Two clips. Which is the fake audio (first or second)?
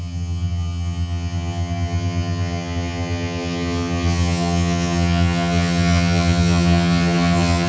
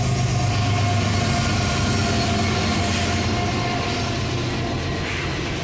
first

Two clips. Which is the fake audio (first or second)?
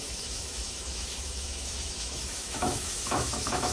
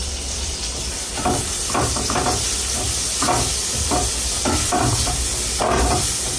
first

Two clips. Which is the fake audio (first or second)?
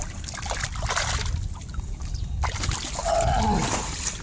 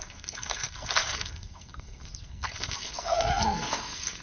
second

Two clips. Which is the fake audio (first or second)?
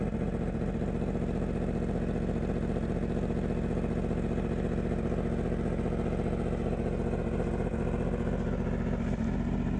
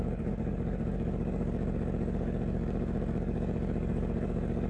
second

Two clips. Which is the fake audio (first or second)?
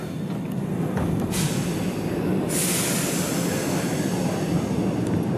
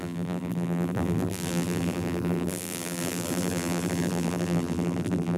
second